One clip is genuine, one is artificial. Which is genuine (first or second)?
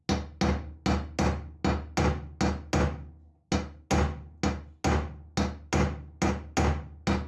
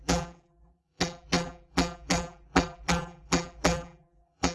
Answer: first